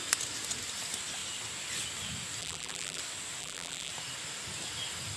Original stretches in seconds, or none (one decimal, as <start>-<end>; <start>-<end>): 0.0-2.4; 3.0-3.4; 3.9-5.2